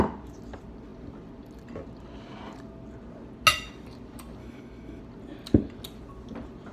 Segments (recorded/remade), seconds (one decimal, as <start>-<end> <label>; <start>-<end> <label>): 0.0-4.4 recorded; 4.4-5.0 remade; 5.0-6.7 recorded